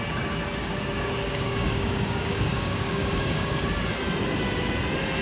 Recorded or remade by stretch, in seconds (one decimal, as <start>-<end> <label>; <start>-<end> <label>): 0.0-0.6 recorded; 0.6-3.7 remade; 3.7-5.2 recorded